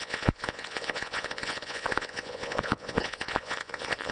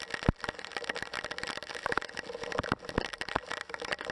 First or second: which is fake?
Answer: first